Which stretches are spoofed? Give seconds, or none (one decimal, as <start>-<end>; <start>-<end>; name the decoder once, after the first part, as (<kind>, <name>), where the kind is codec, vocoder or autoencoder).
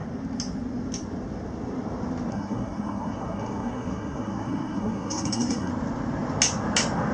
2.3-5.7 (codec, SNAC)